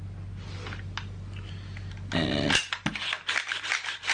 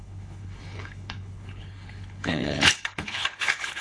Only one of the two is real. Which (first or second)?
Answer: first